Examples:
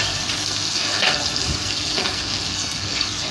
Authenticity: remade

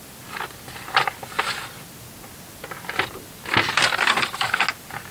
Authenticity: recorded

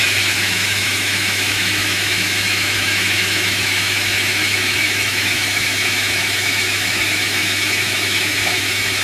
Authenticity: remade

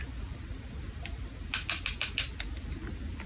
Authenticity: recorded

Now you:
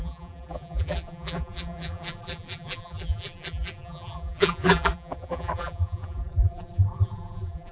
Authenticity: remade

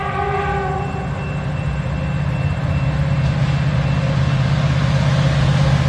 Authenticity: recorded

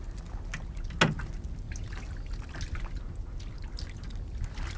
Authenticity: recorded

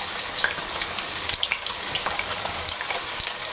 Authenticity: remade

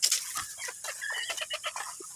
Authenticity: recorded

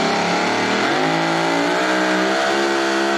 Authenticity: recorded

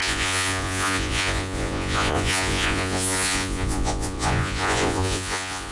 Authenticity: remade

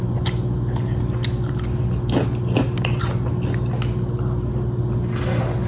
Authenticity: recorded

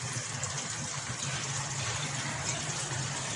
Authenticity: remade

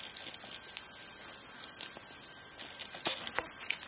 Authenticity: recorded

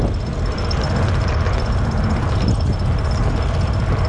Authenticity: recorded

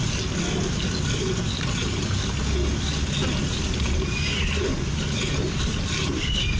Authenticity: recorded